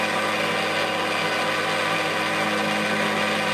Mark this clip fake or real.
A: real